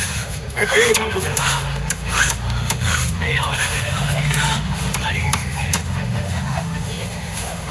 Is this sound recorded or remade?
remade